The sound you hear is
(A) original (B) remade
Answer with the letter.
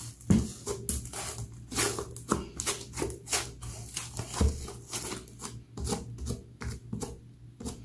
A